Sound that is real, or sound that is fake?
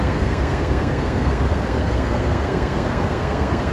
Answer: fake